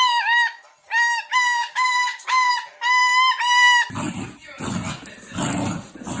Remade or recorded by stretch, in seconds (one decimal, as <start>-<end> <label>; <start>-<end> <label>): 0.0-1.3 recorded; 1.3-2.5 remade; 2.5-6.2 recorded